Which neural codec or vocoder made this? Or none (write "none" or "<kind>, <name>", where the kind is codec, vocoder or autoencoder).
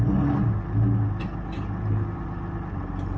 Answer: none